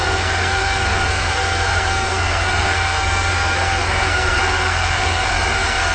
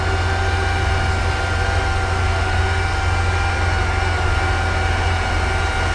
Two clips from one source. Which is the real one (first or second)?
second